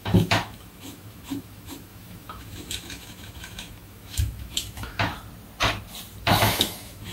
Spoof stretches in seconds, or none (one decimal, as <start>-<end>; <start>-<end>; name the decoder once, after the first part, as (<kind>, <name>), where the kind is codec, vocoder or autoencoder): 0.0-5.1 (autoencoder, DAC-VAE); 6.3-7.1